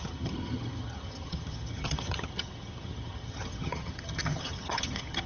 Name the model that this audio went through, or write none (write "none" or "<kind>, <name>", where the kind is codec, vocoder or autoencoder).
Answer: vocoder, HiFi-GAN